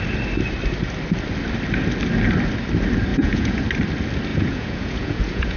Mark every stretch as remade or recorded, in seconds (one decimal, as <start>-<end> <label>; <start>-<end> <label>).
0.0-3.1 recorded; 3.1-3.6 remade; 3.6-4.3 recorded; 4.3-5.6 remade